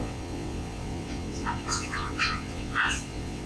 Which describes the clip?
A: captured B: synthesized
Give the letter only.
B